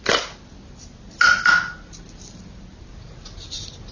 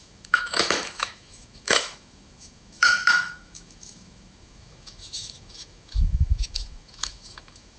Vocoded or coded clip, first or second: second